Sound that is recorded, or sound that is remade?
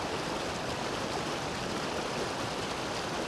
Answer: recorded